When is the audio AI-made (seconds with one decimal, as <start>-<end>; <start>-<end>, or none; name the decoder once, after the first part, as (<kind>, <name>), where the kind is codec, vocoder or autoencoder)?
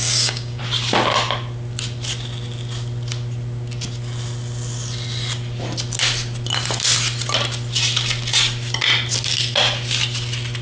0.0-0.6 (codec, DAC)